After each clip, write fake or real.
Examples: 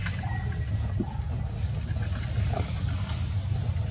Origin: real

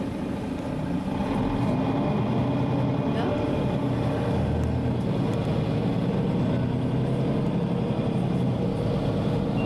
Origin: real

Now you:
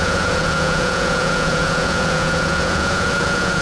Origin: fake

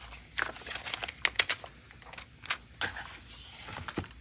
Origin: real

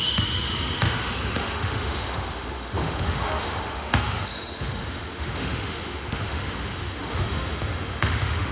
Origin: fake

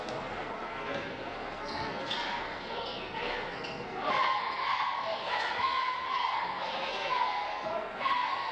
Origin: fake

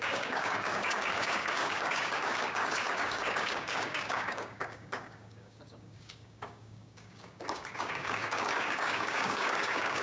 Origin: fake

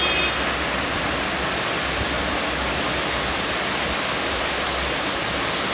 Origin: real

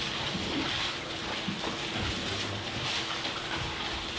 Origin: real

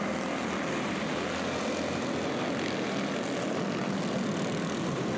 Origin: real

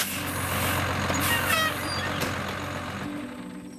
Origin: real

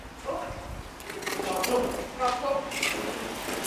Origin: real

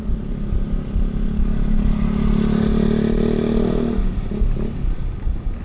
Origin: real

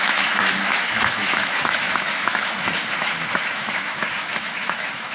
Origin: fake